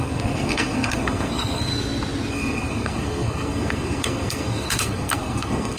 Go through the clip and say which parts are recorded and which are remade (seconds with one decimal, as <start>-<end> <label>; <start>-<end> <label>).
0.0-1.7 remade; 1.7-2.3 recorded; 2.3-5.8 remade